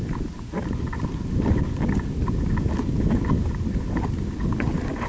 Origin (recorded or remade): recorded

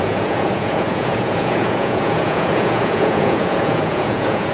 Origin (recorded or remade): remade